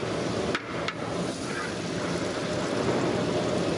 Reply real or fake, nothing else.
real